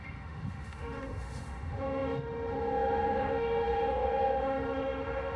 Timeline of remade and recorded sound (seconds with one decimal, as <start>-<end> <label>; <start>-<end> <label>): 0.0-5.4 remade